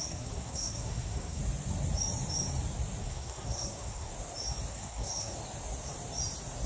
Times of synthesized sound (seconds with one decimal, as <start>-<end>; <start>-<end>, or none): 0.0-1.4; 3.0-4.1; 4.7-5.3